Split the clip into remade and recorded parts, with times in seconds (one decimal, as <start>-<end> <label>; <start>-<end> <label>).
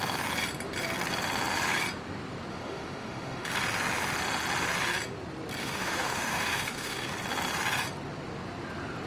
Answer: 0.0-2.5 recorded; 2.5-3.5 remade; 3.5-5.6 recorded; 5.6-7.1 remade; 7.1-9.1 recorded